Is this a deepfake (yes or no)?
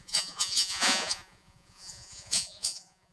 yes